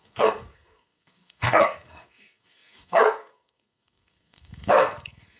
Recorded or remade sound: remade